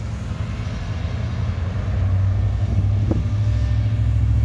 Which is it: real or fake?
real